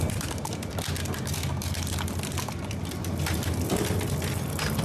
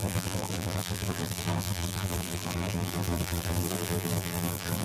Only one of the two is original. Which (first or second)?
first